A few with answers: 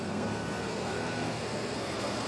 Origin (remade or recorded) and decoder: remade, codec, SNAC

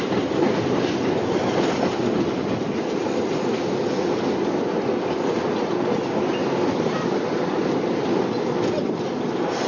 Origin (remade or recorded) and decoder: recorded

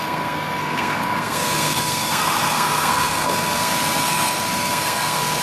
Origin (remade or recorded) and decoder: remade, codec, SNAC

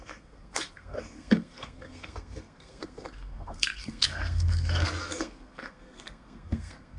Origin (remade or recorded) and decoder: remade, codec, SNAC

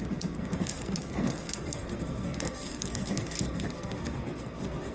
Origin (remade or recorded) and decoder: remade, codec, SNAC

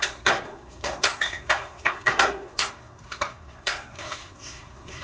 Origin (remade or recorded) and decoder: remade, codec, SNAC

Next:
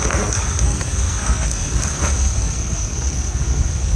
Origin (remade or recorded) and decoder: remade, codec, SNAC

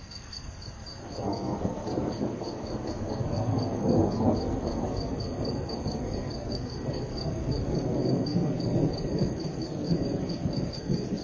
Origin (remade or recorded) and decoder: remade, codec, SNAC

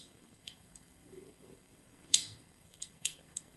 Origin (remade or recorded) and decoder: remade, codec, SNAC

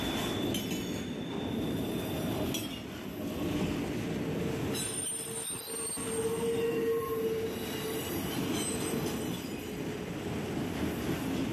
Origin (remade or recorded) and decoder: recorded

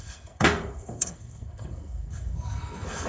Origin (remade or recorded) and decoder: remade, codec, SNAC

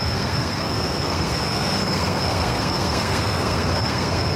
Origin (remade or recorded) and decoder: remade, codec, SNAC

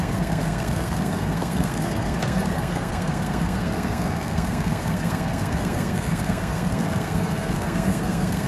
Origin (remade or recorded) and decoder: remade, codec, SNAC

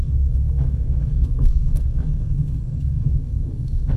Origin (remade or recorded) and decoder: remade, codec, SNAC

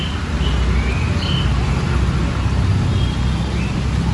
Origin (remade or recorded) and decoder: recorded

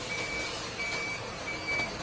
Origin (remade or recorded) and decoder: recorded